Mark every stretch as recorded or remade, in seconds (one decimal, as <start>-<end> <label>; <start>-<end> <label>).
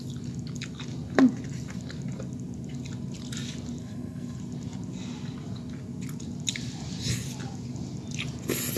0.0-3.8 recorded; 3.8-4.4 remade; 4.4-8.8 recorded